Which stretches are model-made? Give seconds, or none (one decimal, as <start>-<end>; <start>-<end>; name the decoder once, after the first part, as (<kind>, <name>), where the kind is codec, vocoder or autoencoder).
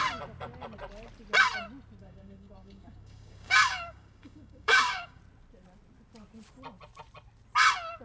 2.0-5.2 (codec, DAC)